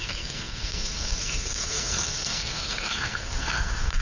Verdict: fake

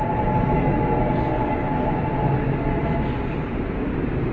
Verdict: real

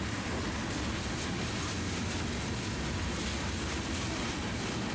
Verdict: real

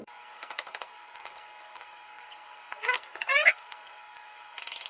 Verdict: fake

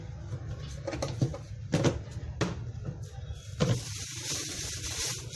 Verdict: real